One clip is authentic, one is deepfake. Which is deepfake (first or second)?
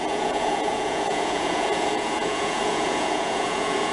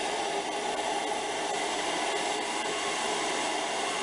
first